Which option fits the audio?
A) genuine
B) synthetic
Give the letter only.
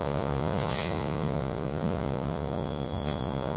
B